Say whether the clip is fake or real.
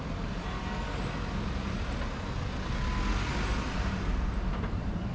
real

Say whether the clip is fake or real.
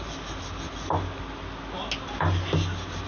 real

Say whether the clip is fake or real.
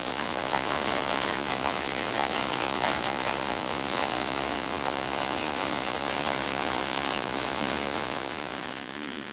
fake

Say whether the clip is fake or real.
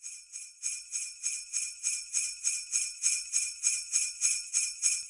fake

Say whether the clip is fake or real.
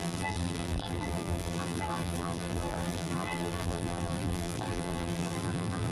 fake